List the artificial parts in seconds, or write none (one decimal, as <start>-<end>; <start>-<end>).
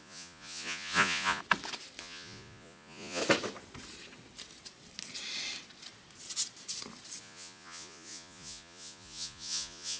0.0-1.4; 2.0-3.2; 7.2-10.0